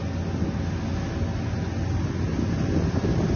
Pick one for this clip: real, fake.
real